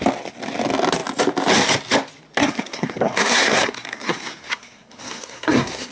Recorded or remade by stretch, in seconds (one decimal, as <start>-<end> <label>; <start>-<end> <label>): 0.0-2.4 recorded; 2.4-5.9 remade